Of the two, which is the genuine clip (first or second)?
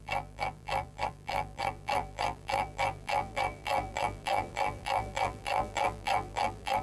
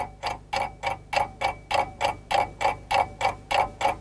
second